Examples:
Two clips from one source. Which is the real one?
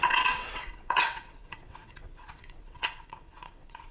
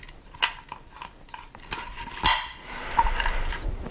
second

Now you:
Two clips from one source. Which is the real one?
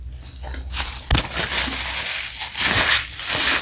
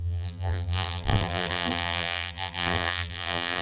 first